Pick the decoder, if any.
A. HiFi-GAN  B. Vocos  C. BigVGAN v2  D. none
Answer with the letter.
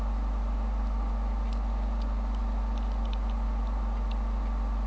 D